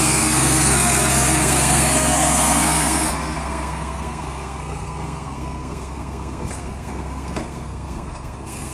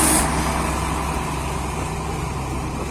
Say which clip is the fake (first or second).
first